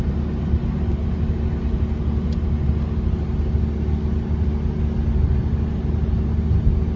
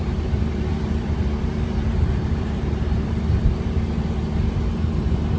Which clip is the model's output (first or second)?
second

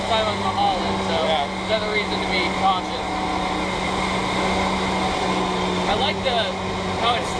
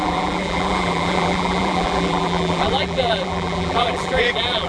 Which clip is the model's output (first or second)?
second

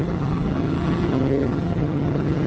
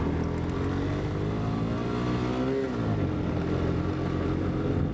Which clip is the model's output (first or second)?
first